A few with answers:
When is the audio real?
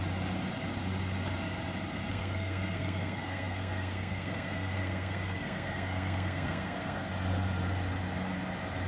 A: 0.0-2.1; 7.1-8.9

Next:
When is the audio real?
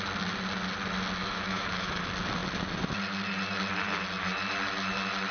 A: 0.0-1.2; 2.0-5.3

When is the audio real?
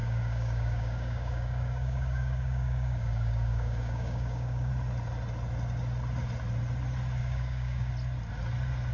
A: 4.7-7.2; 7.9-8.9